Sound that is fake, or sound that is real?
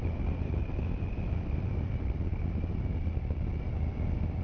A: real